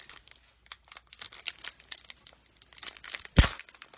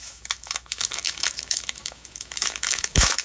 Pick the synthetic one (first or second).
second